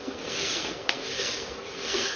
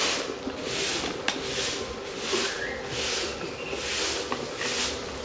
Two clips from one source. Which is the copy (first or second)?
first